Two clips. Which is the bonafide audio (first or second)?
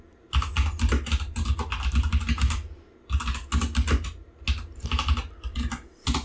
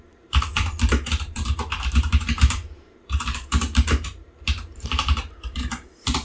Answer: first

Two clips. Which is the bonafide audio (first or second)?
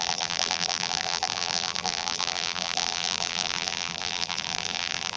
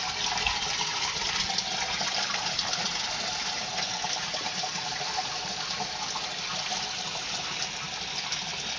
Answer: second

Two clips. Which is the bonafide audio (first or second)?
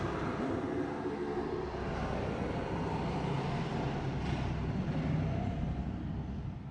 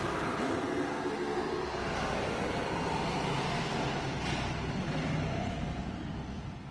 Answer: second